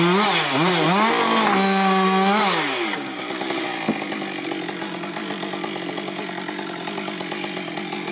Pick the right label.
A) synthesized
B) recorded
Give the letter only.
B